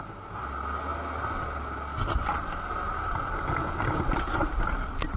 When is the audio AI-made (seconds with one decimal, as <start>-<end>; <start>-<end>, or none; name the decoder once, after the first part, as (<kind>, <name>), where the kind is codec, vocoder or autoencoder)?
none